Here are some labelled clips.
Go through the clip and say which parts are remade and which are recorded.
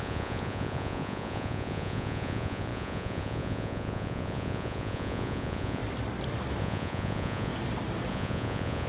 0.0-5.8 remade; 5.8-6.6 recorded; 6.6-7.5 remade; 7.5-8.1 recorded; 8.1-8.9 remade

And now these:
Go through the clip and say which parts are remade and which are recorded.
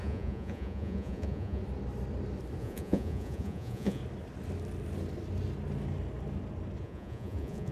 0.0-1.6 remade; 1.6-2.6 recorded; 2.6-4.0 remade; 4.0-6.8 recorded; 6.8-7.7 remade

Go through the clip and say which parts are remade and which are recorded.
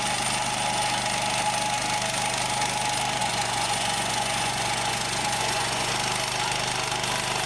0.0-3.2 recorded; 3.2-5.9 remade; 5.9-7.5 recorded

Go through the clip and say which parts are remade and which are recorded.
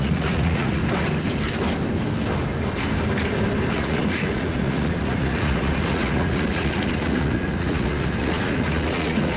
0.0-0.8 remade; 0.8-3.7 recorded; 3.7-9.4 remade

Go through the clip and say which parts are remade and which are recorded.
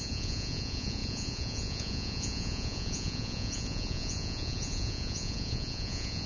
0.0-6.3 remade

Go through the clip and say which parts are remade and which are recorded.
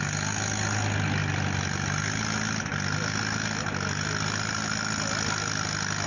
0.0-6.1 recorded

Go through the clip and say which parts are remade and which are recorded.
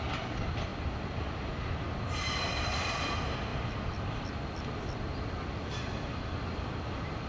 0.0-7.3 recorded